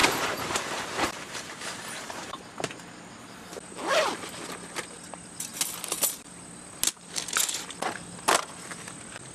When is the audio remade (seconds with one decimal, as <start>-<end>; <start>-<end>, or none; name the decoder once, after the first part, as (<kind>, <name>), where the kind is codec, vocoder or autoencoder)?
0.0-2.4 (vocoder, BigVGAN v2)